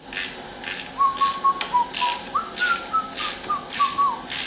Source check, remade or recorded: recorded